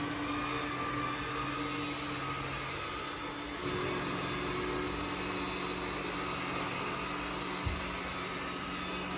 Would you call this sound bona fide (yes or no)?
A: yes